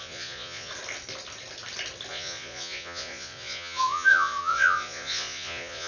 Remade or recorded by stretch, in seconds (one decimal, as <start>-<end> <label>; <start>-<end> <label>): 0.0-0.7 remade; 0.7-2.1 recorded; 2.1-5.9 remade